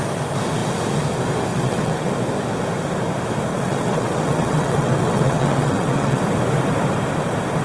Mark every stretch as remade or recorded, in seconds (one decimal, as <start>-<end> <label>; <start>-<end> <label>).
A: 0.0-1.5 recorded; 1.5-2.1 remade; 2.1-3.5 recorded; 3.5-6.2 remade; 6.2-7.6 recorded